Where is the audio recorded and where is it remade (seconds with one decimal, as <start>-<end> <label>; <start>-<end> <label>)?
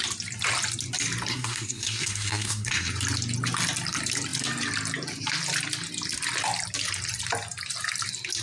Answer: 0.0-1.3 recorded; 1.3-2.9 remade; 2.9-8.4 recorded